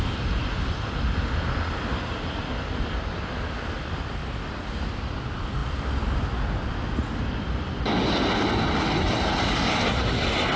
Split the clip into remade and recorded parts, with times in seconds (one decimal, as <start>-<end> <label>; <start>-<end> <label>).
0.0-10.6 recorded

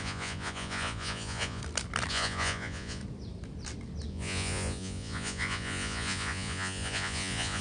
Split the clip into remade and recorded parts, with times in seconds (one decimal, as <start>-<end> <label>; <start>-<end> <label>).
0.0-1.6 remade; 1.6-2.1 recorded; 2.1-3.0 remade; 3.0-4.1 recorded; 4.1-7.6 remade

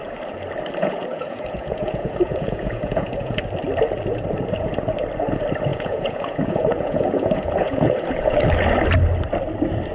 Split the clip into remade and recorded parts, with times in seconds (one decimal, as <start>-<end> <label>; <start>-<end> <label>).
0.0-0.8 recorded; 0.8-3.4 remade; 3.4-5.7 recorded; 5.7-8.4 remade; 8.4-9.9 recorded

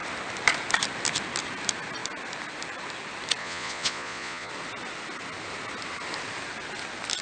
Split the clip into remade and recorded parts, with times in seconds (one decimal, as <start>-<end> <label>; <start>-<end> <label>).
0.0-3.4 recorded; 3.4-4.5 remade; 4.5-7.2 recorded

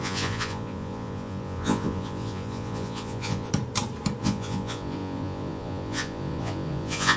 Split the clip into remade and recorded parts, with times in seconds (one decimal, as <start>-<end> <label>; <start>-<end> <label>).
0.0-3.5 remade; 3.5-4.2 recorded; 4.2-7.2 remade

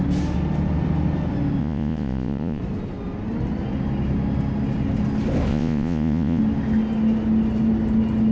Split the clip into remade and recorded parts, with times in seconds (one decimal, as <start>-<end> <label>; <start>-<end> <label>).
0.0-1.6 recorded; 1.6-2.6 remade; 2.6-5.5 recorded; 5.5-6.4 remade; 6.4-8.3 recorded